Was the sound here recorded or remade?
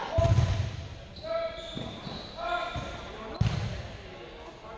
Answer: recorded